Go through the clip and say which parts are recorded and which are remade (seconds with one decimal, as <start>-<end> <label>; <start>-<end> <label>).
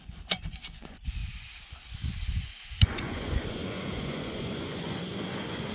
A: 0.0-1.2 remade; 1.2-2.4 recorded; 2.4-5.7 remade